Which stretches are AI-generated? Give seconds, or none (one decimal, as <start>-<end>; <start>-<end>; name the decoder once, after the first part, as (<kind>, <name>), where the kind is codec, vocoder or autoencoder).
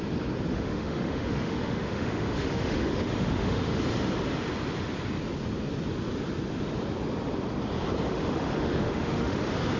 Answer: 0.5-3.8 (autoencoder, DAC-VAE); 8.1-9.4